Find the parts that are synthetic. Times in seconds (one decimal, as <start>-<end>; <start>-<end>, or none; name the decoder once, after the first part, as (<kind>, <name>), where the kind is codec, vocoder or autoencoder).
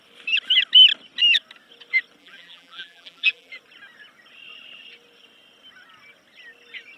2.2-3.5 (vocoder, BigVGAN v2)